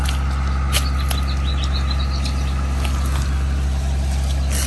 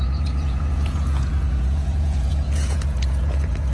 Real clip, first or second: first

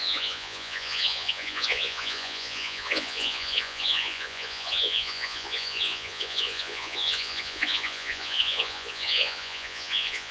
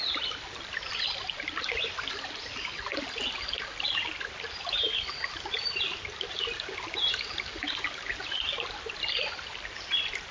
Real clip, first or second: second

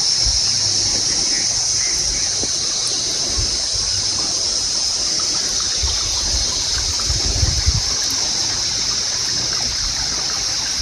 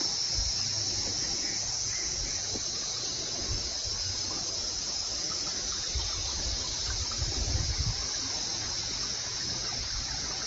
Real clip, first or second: first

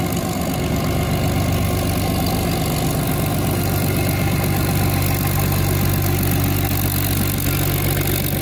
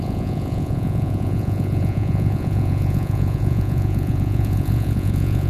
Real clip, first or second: first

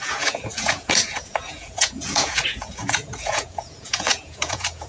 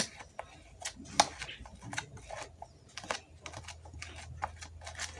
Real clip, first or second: second